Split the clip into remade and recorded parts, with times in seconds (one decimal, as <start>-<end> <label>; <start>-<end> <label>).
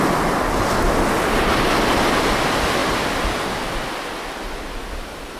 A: 0.0-5.4 recorded